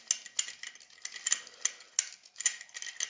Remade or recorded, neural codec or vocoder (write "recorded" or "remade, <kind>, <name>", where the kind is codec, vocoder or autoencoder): recorded